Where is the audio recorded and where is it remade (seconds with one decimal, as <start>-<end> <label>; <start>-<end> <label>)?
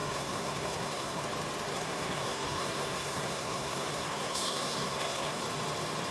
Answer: 0.0-1.2 remade; 1.2-1.7 recorded; 1.7-5.4 remade; 5.4-6.1 recorded